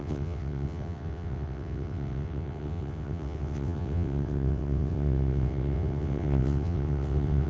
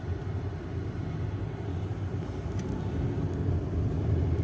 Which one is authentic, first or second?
second